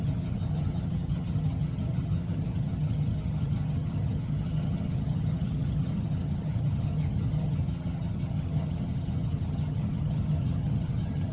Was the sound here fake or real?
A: fake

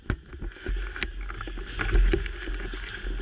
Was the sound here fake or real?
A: real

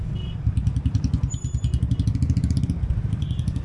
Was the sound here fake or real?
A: real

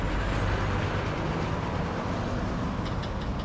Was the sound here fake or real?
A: real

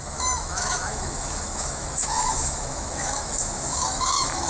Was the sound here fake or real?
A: fake